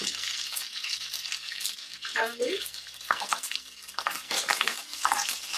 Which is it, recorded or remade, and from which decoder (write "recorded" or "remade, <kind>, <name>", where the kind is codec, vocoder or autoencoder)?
remade, codec, SNAC